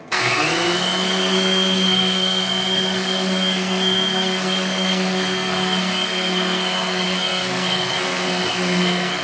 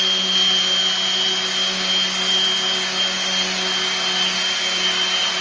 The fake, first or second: first